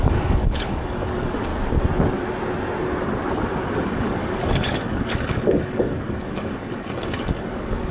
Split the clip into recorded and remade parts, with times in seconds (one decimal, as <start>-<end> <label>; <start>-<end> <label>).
0.0-1.5 remade; 1.5-3.8 recorded; 3.8-7.9 remade